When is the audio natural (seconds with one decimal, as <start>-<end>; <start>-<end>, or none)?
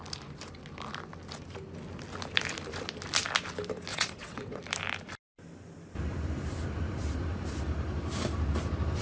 0.0-3.9; 4.6-9.0